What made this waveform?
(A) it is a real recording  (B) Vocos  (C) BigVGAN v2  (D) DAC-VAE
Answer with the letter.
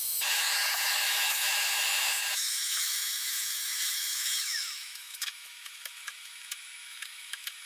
D